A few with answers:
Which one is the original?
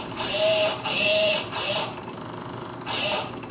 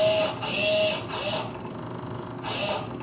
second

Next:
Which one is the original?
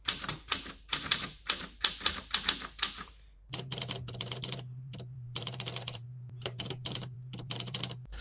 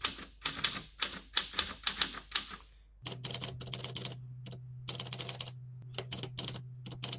second